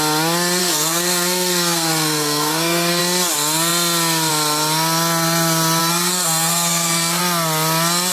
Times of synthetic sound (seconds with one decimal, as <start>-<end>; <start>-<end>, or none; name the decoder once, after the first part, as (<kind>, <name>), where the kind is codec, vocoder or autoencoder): 0.6-3.0 (codec, SNAC); 5.8-7.2